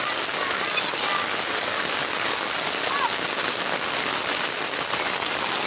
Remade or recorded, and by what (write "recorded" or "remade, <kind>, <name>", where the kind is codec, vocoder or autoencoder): recorded